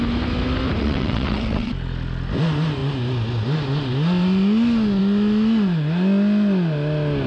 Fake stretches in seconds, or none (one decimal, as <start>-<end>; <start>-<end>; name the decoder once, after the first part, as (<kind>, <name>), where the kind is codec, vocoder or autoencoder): 0.8-1.7 (vocoder, WaveNeXt)